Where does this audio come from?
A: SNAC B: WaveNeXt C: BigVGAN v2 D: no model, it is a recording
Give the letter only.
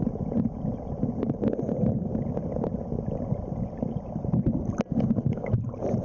D